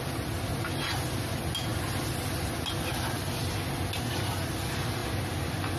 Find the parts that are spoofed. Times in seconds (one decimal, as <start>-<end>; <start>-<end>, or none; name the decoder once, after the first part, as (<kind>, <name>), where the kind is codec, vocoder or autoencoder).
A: none